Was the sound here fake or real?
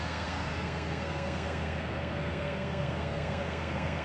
fake